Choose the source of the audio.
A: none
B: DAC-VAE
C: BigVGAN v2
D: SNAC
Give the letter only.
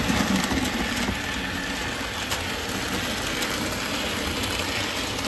A